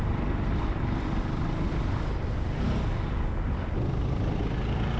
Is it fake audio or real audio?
real